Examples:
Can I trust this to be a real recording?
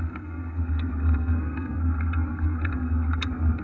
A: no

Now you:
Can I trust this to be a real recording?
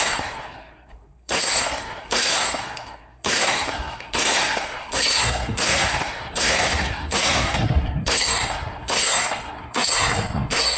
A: no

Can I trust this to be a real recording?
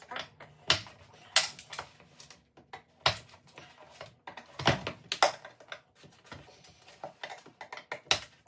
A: yes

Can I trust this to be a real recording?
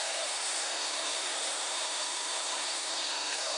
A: no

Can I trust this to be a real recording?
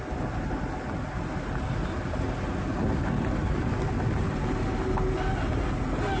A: yes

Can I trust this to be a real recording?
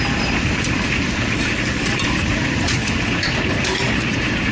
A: no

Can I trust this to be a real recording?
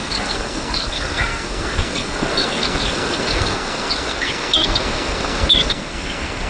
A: no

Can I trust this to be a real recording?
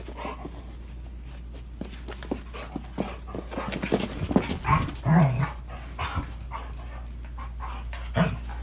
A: yes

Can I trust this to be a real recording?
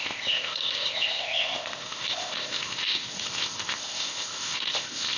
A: no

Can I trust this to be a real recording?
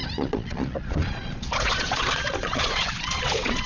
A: no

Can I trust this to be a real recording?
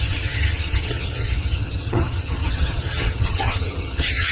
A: no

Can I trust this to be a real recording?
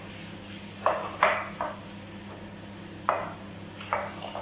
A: yes